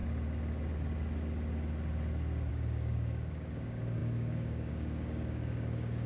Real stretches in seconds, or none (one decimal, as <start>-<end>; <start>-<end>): 0.0-2.5